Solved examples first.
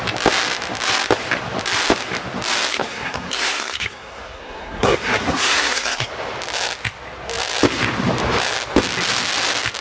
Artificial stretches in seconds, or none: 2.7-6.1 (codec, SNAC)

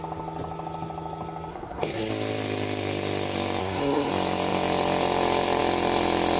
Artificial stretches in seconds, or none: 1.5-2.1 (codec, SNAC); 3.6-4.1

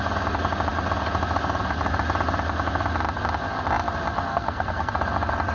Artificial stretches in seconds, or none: 4.3-4.9 (codec, SNAC)

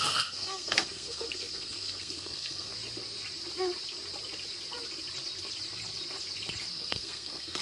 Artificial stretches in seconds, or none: 0.0-2.7 (codec, SNAC); 6.7-7.6

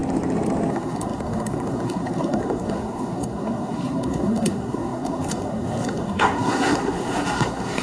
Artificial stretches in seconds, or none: 0.7-7.8 (codec, SNAC)